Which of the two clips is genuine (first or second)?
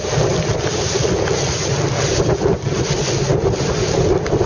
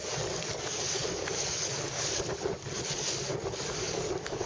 first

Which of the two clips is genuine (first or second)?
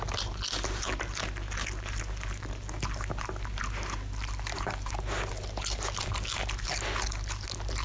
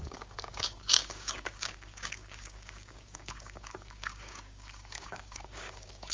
first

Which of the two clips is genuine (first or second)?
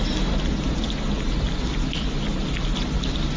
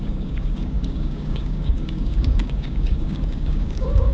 first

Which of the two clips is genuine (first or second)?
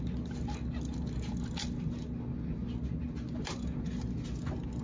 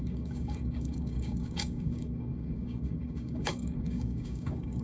first